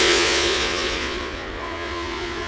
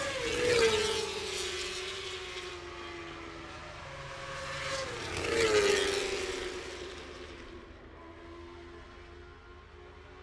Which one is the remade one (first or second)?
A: first